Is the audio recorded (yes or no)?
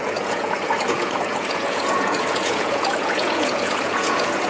no